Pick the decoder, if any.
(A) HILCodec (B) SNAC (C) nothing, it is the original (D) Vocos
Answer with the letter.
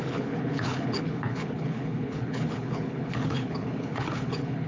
A